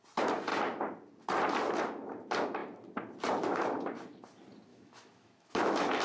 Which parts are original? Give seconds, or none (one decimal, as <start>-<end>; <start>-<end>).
0.0-4.7